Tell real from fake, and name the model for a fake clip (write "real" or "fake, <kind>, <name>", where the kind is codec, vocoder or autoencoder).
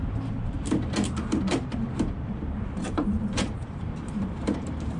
fake, vocoder, BigVGAN v2